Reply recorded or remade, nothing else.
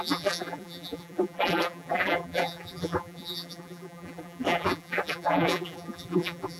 remade